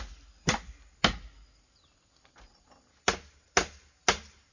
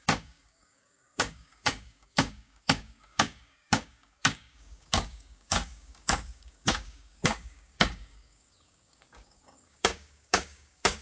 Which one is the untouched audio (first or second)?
first